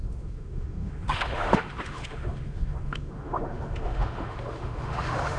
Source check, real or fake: fake